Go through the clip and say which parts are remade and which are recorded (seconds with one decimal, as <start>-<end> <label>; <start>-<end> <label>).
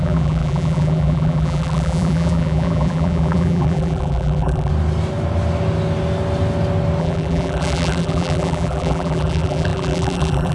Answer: 0.0-4.7 remade; 4.7-7.0 recorded; 7.0-10.5 remade